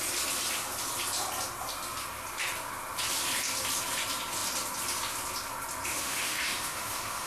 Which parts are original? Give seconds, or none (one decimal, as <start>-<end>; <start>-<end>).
0.0-5.9